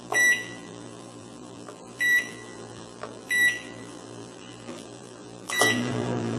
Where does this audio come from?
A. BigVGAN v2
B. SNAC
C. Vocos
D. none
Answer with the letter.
A